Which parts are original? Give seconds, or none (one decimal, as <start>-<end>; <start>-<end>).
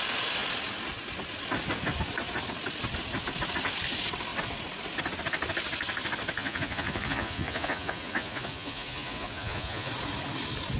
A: 0.0-6.4; 9.9-10.8